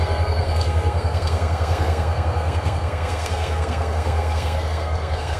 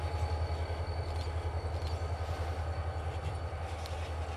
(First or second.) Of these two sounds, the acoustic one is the second